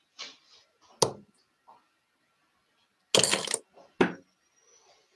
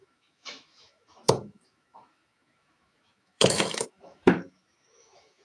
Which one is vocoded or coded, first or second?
second